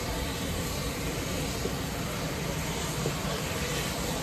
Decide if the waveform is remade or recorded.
recorded